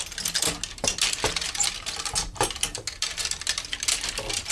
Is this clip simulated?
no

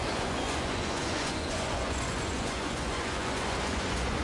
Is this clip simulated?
yes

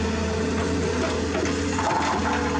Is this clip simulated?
no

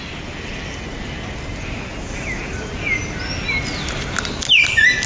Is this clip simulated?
no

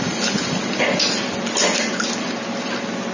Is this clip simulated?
no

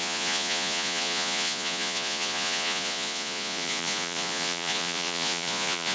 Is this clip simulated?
yes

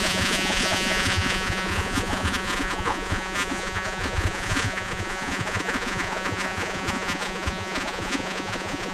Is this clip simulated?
yes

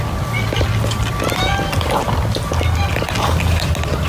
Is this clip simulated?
no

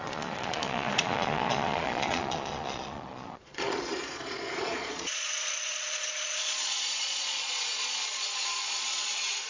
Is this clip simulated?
yes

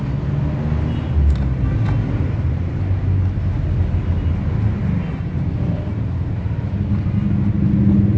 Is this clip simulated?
no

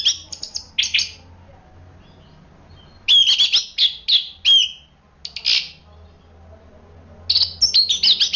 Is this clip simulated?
no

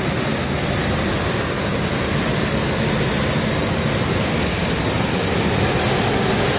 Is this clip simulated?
no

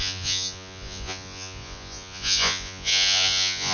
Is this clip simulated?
yes